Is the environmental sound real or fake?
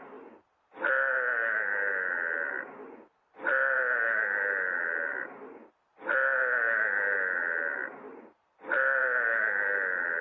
real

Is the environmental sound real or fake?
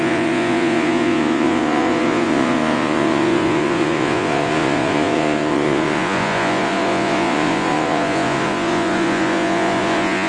fake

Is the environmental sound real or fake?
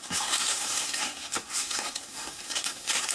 fake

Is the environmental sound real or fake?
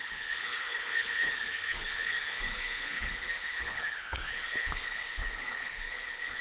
fake